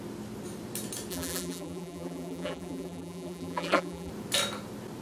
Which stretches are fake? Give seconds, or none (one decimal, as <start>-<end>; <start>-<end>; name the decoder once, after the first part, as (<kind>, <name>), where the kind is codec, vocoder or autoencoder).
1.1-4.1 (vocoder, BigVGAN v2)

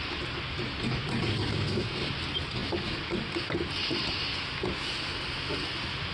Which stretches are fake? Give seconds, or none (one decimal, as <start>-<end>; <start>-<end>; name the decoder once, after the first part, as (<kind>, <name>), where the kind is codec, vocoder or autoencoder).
1.5-2.1 (codec, SNAC)

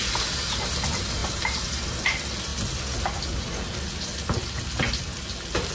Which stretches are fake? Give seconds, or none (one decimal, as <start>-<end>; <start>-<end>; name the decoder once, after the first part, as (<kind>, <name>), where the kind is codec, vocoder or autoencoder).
1.2-1.9 (vocoder, BigVGAN v2)

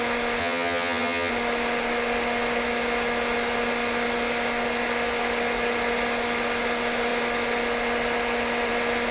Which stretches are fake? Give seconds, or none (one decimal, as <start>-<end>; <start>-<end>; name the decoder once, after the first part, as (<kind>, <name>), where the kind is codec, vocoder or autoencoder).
0.4-1.3 (vocoder, HiFi-GAN)

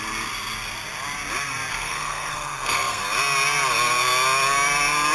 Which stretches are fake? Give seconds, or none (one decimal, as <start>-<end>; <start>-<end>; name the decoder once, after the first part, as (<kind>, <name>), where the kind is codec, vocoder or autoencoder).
1.7-3.0 (codec, SNAC)

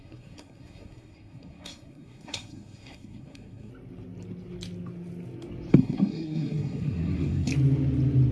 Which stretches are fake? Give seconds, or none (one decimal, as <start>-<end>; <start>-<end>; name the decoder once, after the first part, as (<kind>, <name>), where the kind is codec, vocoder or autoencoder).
0.0-3.7 (codec, SNAC); 5.7-7.5